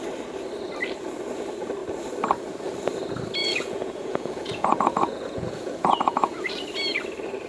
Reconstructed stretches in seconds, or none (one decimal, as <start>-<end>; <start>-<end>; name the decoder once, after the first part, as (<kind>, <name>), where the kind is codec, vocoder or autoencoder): 3.4-6.5 (vocoder, Vocos)